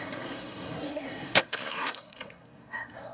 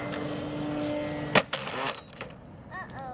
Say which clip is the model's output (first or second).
first